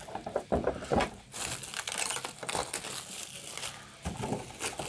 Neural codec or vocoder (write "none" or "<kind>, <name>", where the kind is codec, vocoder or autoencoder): none